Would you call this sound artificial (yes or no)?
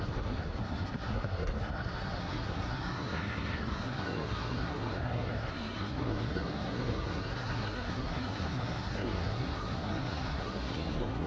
yes